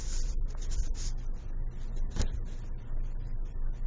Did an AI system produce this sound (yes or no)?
no